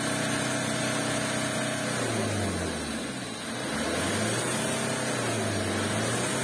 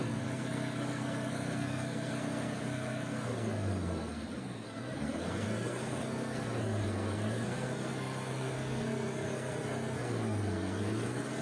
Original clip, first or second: first